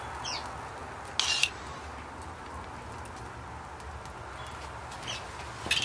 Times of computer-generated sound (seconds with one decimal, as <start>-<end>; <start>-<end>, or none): none